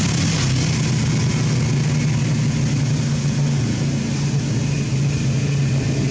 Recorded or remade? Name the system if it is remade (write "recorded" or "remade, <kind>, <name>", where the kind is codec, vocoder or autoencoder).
recorded